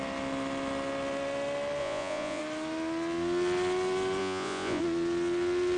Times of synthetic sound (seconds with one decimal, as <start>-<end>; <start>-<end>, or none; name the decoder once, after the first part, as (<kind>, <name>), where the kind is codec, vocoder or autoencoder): 1.8-2.4 (vocoder, Vocos); 4.2-4.8